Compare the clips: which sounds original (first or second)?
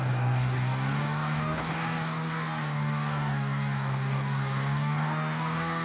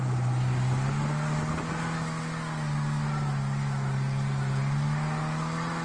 second